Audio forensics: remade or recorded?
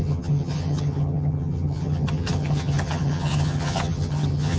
remade